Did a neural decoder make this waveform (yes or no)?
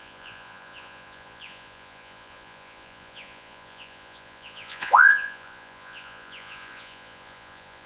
yes